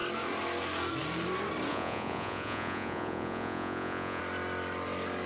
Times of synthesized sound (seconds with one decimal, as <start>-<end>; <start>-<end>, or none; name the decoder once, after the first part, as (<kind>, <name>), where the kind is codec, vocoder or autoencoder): 1.7-4.2 (vocoder, Vocos)